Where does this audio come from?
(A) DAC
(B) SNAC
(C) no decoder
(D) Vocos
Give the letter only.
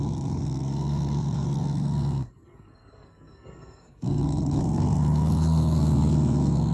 B